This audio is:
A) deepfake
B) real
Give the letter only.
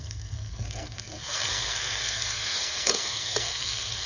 A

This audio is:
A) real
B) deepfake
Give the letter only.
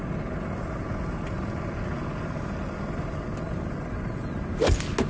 A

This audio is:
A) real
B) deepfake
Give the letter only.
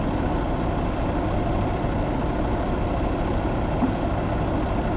A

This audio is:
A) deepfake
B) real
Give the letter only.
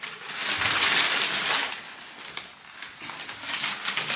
B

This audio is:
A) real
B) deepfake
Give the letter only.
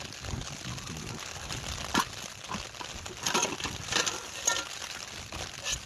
A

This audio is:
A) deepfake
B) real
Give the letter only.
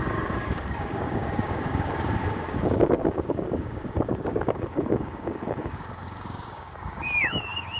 A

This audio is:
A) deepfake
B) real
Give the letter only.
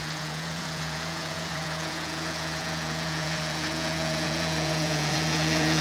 A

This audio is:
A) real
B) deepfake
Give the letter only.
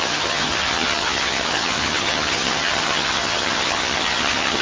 B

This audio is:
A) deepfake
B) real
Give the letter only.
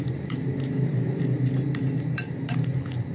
A